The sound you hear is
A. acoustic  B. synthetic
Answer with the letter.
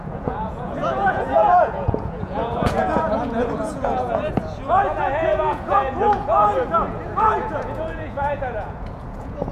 B